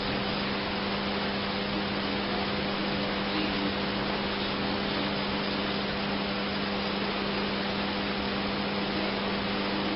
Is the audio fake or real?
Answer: real